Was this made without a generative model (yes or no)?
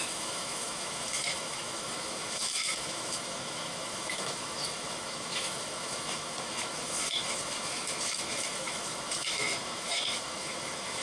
no